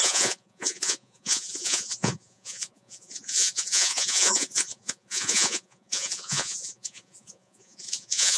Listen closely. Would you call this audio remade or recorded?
remade